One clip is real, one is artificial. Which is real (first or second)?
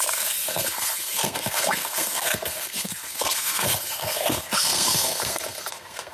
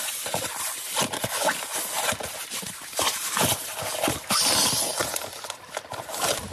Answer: second